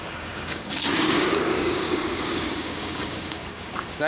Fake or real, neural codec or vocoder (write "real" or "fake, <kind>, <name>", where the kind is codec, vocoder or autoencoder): fake, codec, DAC